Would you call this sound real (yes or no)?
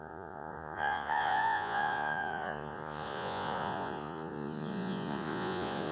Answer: no